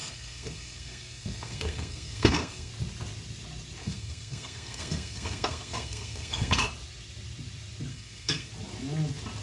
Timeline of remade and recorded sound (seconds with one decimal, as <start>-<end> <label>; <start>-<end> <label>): 0.0-2.7 remade; 2.7-3.8 recorded; 3.8-6.7 remade; 6.7-7.9 recorded; 7.9-8.5 remade; 8.5-9.4 recorded